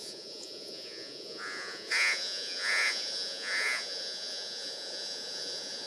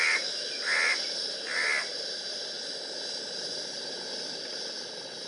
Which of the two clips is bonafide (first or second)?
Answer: second